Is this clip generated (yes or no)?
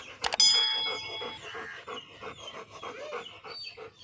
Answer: no